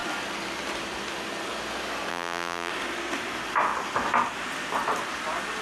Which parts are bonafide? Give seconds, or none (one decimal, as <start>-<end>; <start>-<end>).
0.0-2.1; 2.7-5.6